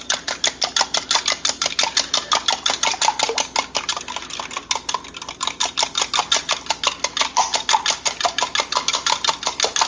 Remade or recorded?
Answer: recorded